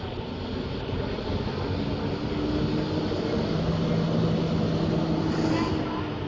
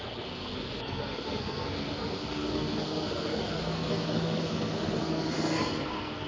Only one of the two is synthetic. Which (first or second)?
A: second